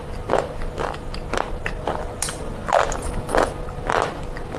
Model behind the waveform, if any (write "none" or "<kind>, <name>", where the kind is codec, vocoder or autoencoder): none